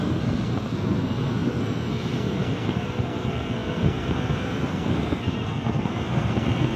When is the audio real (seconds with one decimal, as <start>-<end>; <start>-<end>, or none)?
none